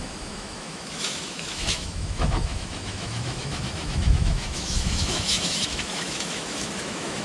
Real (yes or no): no